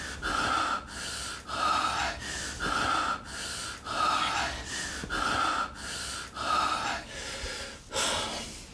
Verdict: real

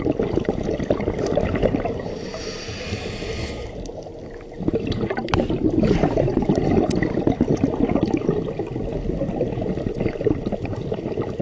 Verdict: real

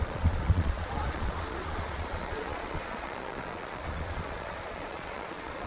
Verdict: fake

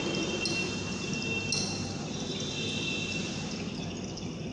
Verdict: real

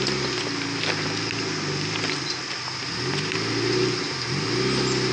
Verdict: real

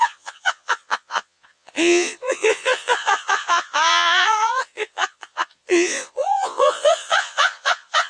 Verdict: fake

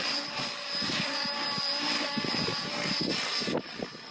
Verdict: real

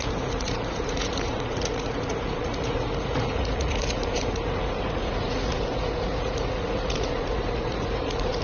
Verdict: fake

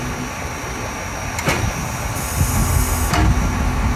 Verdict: real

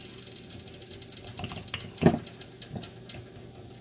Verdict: real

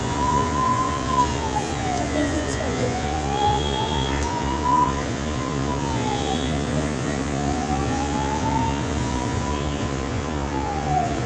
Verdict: fake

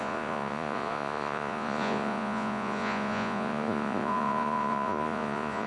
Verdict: fake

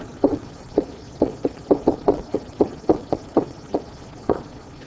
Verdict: fake